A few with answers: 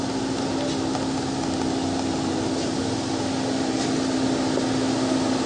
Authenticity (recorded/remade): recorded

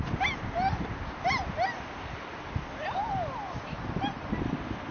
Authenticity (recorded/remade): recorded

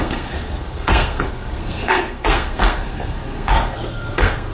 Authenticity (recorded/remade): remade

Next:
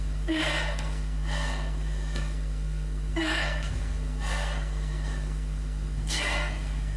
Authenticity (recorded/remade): remade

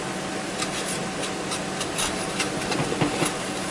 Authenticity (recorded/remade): recorded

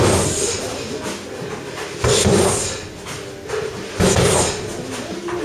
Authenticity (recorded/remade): recorded